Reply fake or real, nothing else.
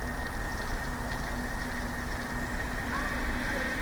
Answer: real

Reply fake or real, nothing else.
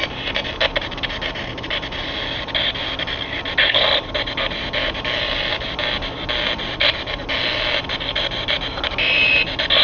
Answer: real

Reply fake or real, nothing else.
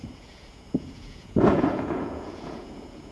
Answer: fake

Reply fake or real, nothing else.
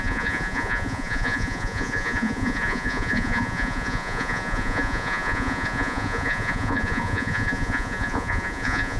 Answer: fake